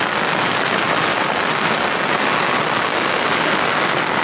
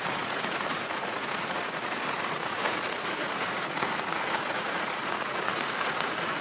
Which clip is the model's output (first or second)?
second